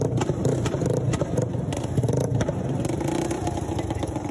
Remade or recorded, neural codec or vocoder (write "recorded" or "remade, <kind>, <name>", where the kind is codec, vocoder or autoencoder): remade, vocoder, BigVGAN v2